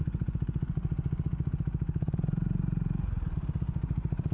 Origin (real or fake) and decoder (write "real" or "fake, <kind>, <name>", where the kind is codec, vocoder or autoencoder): fake, vocoder, BigVGAN v2